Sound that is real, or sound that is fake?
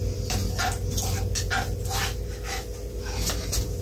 real